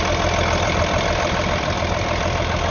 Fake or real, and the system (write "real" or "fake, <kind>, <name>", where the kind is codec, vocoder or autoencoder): real